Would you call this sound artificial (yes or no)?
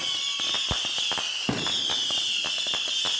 no